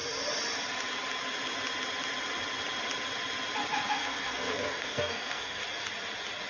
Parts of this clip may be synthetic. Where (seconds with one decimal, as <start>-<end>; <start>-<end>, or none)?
3.9-5.6